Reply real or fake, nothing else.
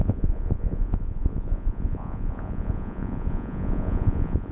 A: fake